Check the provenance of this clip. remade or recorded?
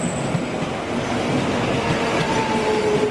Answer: recorded